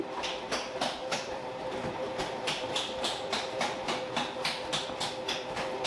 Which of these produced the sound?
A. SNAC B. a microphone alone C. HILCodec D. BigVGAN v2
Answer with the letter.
D